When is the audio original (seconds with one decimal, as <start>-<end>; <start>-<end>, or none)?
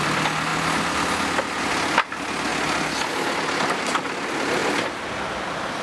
0.0-5.8